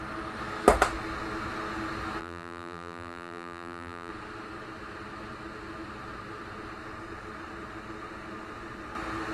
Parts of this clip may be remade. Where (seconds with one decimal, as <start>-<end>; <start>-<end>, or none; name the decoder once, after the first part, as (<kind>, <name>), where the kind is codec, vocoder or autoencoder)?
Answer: 2.2-4.1 (vocoder, BigVGAN v2)